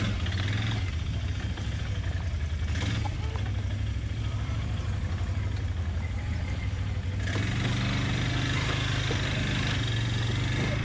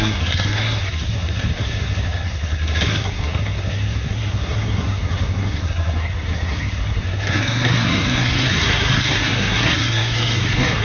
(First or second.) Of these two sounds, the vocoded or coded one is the second